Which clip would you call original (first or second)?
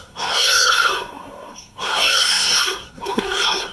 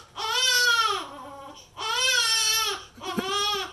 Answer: second